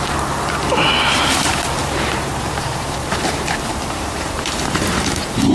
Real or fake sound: fake